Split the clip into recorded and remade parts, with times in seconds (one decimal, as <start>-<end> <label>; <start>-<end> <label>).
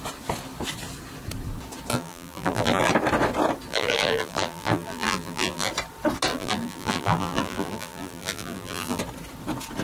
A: 0.0-1.9 recorded; 1.9-2.9 remade; 2.9-3.7 recorded; 3.7-5.7 remade; 5.7-6.3 recorded; 6.3-9.0 remade; 9.0-9.8 recorded